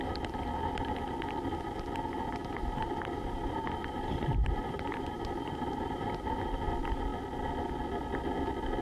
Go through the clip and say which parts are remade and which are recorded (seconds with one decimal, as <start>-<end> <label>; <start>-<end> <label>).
0.0-2.4 recorded; 2.4-6.5 remade; 6.5-8.8 recorded